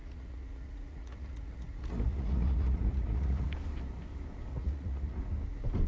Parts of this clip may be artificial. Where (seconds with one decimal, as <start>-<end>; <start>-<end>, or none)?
0.0-3.5; 4.5-5.2